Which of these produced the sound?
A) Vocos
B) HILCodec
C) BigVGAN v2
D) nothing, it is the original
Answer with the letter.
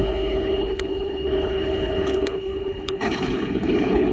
B